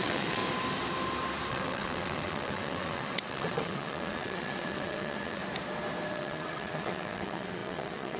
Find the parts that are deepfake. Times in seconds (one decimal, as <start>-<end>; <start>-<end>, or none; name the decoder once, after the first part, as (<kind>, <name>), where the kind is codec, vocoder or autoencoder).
0.0-0.4 (vocoder, WaveNeXt); 1.5-5.4; 6.1-8.2